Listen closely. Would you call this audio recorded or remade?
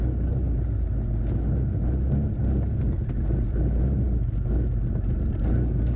recorded